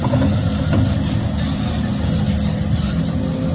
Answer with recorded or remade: recorded